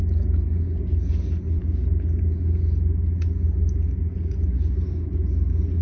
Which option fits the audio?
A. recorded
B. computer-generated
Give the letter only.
A